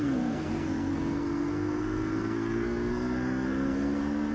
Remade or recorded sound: remade